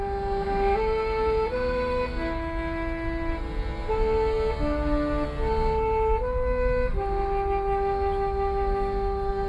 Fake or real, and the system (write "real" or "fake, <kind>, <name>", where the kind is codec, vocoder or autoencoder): real